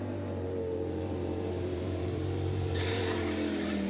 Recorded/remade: remade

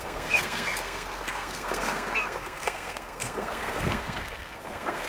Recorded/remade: remade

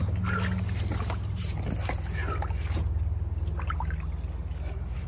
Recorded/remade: recorded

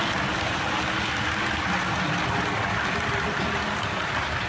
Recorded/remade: recorded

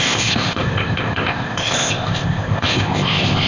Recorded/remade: remade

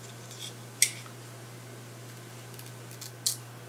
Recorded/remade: recorded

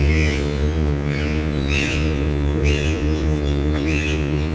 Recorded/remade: remade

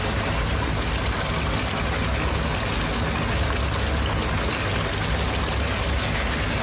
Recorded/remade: recorded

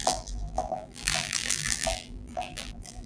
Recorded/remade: remade